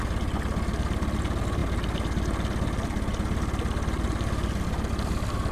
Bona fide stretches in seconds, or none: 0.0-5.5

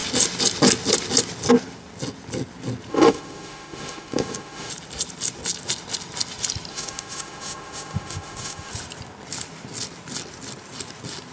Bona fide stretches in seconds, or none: 0.0-2.9; 4.7-6.7; 8.7-11.3

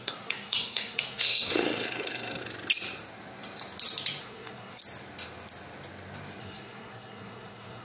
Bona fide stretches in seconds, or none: 2.4-4.2; 4.8-6.4